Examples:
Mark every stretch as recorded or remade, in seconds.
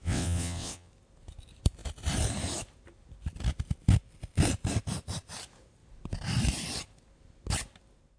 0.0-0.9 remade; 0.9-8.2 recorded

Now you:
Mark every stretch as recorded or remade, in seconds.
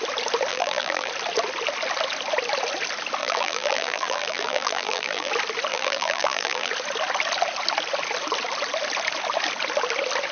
0.0-0.5 recorded; 0.5-1.1 remade; 1.1-3.2 recorded; 3.2-5.3 remade; 5.3-5.7 recorded; 5.7-6.7 remade; 6.7-10.3 recorded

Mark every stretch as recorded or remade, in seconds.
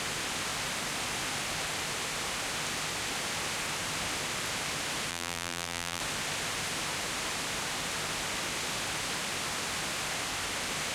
0.0-5.1 recorded; 5.1-6.0 remade; 6.0-10.9 recorded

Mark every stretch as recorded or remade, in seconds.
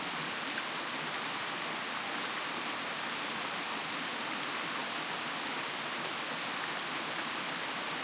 0.0-8.0 recorded